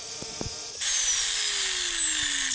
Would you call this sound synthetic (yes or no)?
no